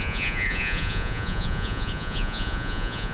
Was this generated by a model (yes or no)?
yes